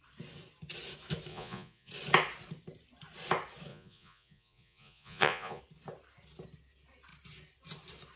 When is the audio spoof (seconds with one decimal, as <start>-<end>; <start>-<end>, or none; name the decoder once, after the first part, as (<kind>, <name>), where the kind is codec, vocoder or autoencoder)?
1.3-1.9 (vocoder, Vocos); 3.7-5.6